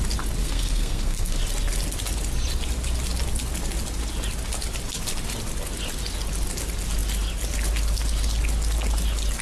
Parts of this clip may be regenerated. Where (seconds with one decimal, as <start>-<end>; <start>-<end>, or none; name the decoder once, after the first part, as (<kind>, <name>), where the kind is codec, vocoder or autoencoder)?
0.4-1.4 (codec, SNAC)